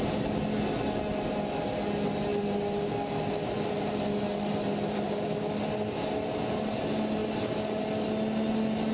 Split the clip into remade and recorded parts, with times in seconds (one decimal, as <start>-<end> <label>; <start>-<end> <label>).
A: 0.0-8.9 recorded